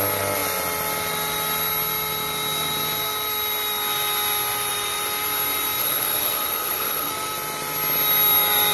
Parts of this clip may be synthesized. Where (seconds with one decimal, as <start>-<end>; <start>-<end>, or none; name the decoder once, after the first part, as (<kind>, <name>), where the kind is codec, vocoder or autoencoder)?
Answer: 5.8-7.1 (codec, HILCodec)